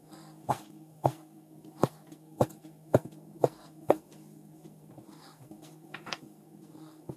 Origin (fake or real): fake